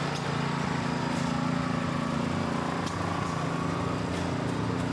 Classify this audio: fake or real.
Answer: real